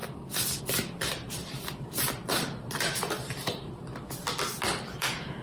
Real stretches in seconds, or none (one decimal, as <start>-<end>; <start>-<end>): 0.0-0.6; 3.9-4.9